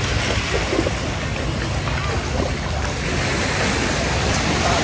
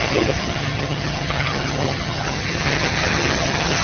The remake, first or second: second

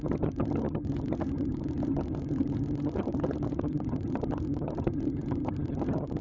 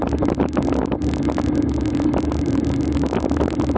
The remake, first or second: first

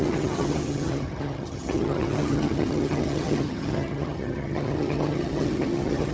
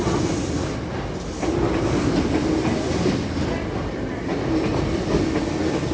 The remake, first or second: first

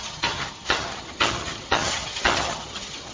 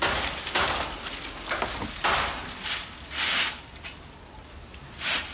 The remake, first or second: first